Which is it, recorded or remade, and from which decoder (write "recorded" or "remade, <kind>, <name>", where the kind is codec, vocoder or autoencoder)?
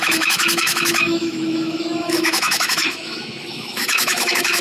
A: remade, autoencoder, DAC-VAE